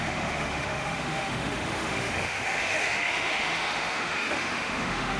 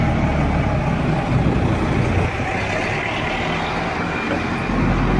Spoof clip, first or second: first